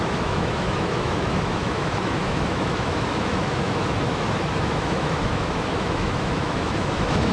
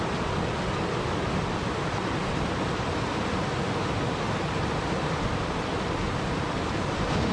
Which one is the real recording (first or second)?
second